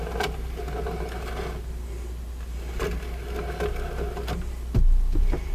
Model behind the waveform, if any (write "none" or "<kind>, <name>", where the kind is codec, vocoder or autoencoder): none